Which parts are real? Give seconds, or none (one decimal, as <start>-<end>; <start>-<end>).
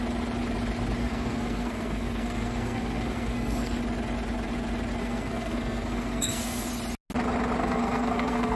0.0-1.0; 3.8-5.0; 6.7-7.6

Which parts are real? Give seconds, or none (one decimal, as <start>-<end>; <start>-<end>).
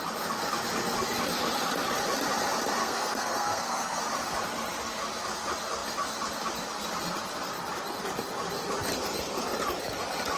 0.0-2.8; 4.0-10.4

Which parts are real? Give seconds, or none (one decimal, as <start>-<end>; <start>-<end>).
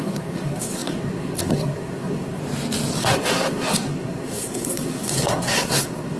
2.4-3.0